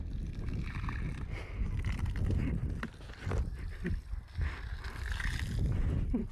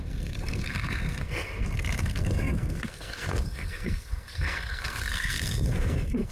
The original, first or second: first